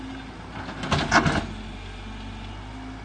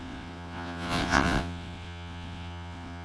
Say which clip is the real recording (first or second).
first